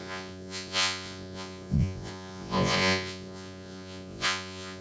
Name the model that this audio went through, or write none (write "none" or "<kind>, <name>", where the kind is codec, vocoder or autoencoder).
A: vocoder, Vocos